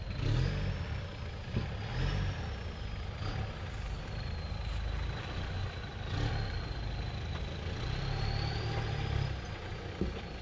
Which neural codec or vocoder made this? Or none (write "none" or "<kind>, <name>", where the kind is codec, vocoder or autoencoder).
none